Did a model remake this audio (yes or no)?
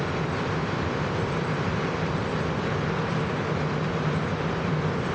no